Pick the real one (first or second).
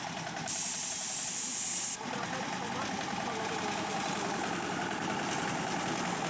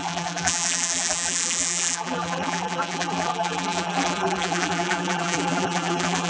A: first